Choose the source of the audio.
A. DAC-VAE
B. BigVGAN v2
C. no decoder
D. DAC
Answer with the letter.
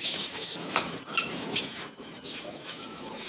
A